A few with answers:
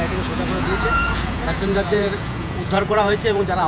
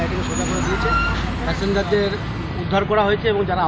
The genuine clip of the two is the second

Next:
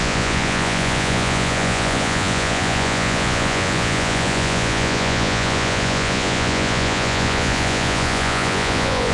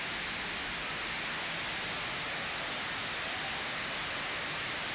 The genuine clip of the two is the second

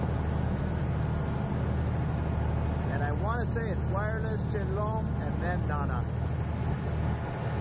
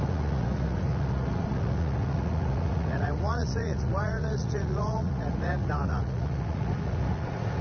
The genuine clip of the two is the first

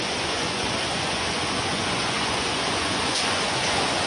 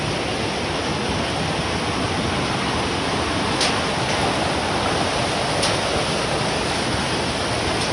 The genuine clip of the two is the second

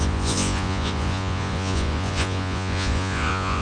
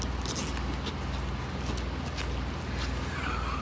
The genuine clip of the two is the second